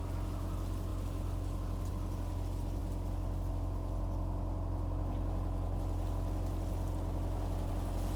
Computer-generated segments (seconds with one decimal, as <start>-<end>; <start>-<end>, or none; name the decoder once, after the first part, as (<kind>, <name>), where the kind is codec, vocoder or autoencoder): none